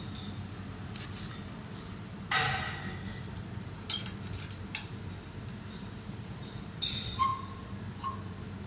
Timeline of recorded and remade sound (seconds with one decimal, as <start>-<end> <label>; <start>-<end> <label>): 0.0-8.7 recorded